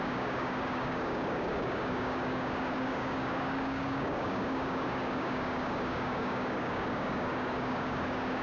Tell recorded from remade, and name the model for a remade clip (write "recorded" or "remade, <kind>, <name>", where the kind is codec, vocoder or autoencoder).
remade, codec, DAC